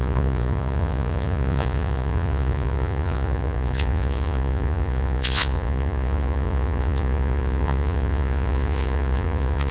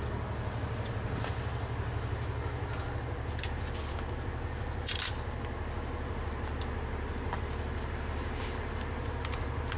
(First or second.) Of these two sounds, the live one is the second